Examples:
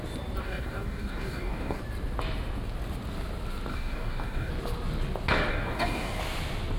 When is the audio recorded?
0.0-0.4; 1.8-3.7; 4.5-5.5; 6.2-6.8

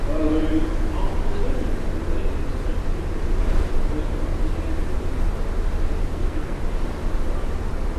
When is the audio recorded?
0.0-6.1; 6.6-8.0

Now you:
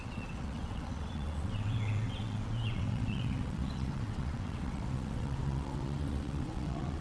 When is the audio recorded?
none